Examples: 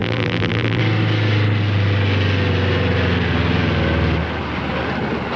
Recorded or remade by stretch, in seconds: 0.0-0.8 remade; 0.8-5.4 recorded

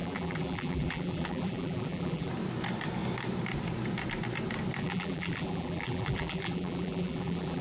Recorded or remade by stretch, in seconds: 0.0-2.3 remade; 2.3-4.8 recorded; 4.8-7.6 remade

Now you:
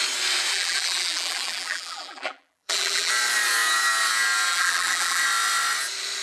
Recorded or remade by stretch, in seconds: 0.0-0.5 recorded; 0.5-3.1 remade; 3.1-4.5 recorded; 4.5-5.2 remade; 5.2-6.2 recorded

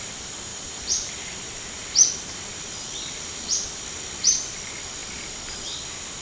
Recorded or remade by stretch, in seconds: 0.0-0.5 recorded; 0.5-1.1 remade; 1.1-6.2 recorded

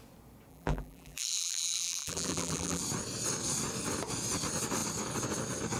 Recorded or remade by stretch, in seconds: 0.0-0.5 recorded; 0.5-2.8 remade; 2.8-5.8 recorded

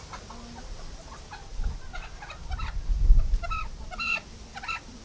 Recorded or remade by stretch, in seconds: 0.0-0.6 recorded; 0.6-1.5 remade; 1.5-3.2 recorded; 3.2-5.0 remade